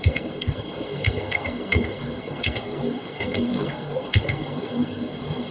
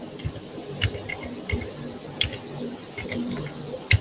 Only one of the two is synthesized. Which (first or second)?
first